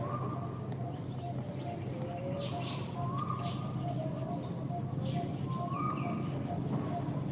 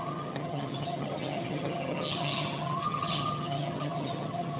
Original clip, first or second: first